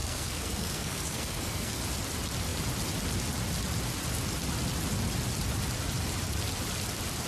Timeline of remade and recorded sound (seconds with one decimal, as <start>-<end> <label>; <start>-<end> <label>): 0.0-1.8 remade; 1.8-7.3 recorded